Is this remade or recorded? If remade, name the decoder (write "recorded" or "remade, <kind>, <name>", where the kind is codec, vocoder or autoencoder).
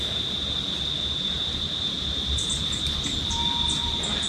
recorded